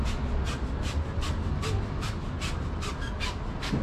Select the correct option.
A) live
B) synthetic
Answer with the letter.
A